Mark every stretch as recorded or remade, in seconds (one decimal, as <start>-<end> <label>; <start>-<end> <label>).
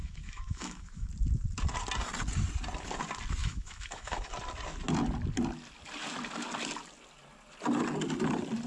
0.0-1.1 remade; 1.1-3.4 recorded; 3.4-4.3 remade; 4.3-8.7 recorded